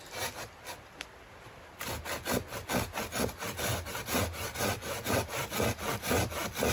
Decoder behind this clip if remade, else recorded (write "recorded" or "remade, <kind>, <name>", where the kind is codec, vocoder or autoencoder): recorded